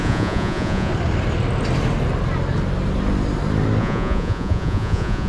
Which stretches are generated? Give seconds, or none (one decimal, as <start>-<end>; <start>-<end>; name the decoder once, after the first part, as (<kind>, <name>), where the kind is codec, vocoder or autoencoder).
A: 0.0-0.9 (vocoder, Vocos); 3.8-5.3